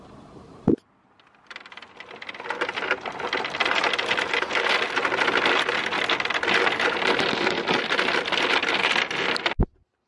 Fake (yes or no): no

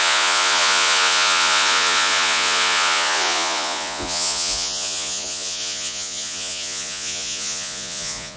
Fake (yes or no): yes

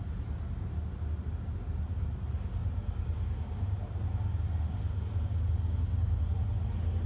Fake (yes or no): no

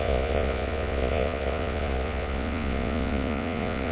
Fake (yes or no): yes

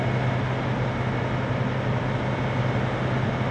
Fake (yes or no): no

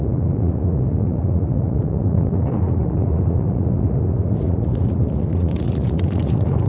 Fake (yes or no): yes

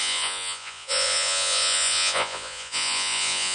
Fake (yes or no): yes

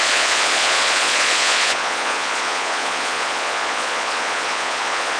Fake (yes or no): yes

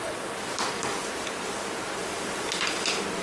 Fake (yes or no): no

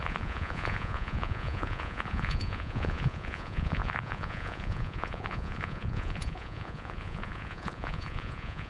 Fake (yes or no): yes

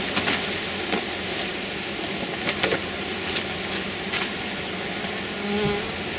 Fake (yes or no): no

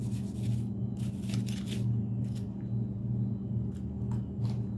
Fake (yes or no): no